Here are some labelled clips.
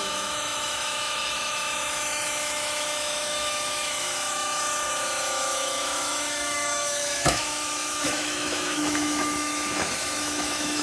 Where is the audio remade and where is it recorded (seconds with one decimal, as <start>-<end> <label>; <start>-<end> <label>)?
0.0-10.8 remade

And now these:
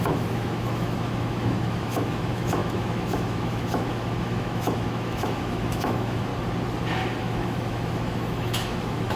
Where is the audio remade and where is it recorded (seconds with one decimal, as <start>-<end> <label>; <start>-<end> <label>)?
0.0-6.3 remade; 6.3-7.2 recorded; 7.2-9.2 remade

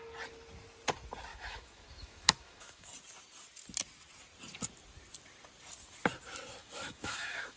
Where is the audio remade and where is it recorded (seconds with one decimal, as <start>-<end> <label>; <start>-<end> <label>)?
0.0-1.3 recorded; 1.3-2.9 remade; 2.9-6.6 recorded; 6.6-7.6 remade